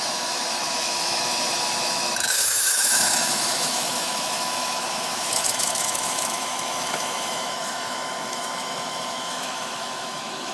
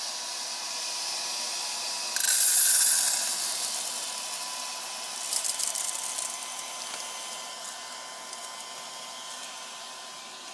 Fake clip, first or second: first